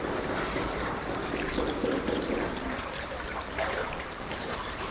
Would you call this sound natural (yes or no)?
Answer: no